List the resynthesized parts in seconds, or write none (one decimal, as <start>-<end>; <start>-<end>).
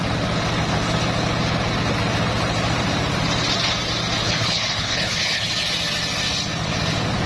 4.2-5.5